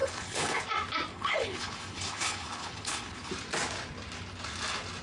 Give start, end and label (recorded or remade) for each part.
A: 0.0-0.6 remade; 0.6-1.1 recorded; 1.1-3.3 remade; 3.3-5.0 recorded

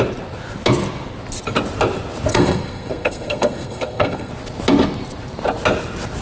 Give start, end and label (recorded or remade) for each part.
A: 0.0-2.3 recorded; 2.3-4.3 remade; 4.3-6.2 recorded

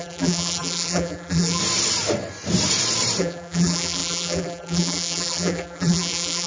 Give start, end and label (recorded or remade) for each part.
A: 0.0-1.6 remade; 1.6-3.2 recorded; 3.2-6.5 remade

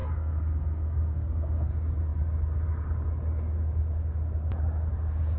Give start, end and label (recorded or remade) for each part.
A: 0.0-1.7 remade; 1.7-5.4 recorded